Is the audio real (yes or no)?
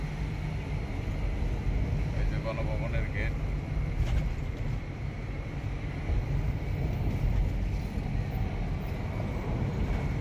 yes